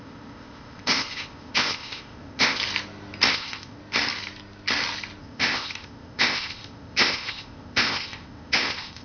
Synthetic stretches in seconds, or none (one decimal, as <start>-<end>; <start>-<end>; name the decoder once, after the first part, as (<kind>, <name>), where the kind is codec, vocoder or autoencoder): 0.0-2.6 (codec, ZipCodec); 3.3-3.8; 5.2-9.0